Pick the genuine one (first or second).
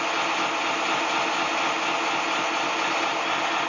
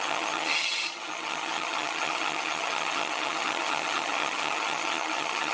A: first